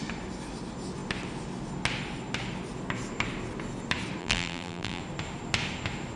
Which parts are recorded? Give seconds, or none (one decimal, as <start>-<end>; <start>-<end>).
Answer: 0.0-4.2; 5.0-6.2